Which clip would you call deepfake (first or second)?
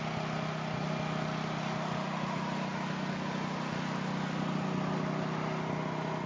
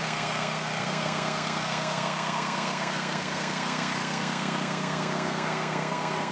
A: second